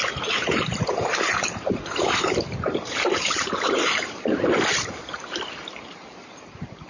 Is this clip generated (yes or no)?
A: yes